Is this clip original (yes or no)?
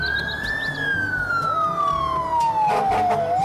yes